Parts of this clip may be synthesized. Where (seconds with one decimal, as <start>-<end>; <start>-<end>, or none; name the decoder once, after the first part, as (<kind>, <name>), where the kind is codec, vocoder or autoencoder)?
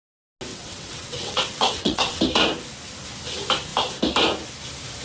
0.5-2.2 (vocoder, WaveNeXt)